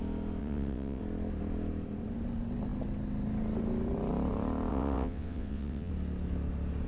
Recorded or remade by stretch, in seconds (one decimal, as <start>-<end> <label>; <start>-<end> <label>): 0.0-0.4 recorded; 0.4-1.0 remade; 1.0-4.7 recorded; 4.7-5.9 remade; 5.9-6.9 recorded